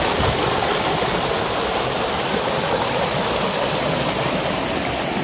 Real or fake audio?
real